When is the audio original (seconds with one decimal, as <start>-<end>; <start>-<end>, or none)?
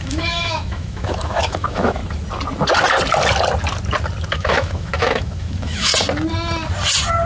2.0-4.3; 5.9-7.3